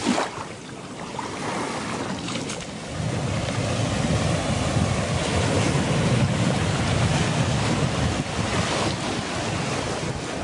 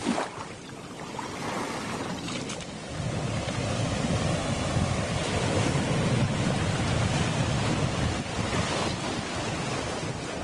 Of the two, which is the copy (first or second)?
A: second